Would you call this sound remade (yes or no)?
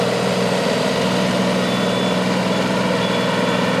no